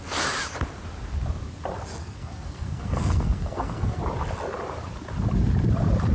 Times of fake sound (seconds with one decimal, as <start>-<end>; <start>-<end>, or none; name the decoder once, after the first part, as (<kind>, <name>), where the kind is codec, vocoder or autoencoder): 2.0-4.0 (codec, SNAC)